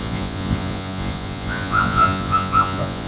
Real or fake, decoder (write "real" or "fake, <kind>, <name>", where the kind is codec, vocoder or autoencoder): fake, vocoder, Vocos